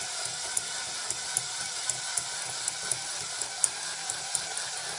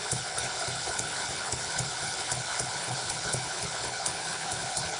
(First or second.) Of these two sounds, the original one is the first